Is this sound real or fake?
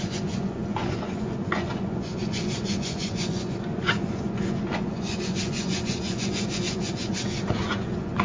fake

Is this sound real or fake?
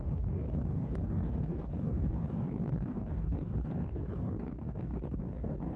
fake